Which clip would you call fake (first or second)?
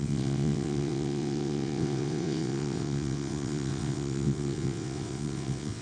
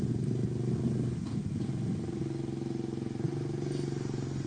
first